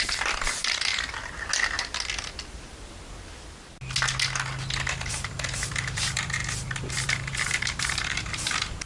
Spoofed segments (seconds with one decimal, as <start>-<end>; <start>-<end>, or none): 0.0-0.9; 5.1-6.4; 6.9-8.9